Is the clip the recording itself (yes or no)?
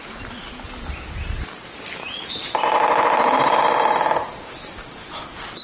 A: no